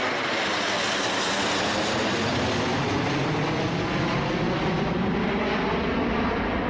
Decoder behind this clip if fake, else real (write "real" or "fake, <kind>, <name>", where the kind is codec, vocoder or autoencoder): real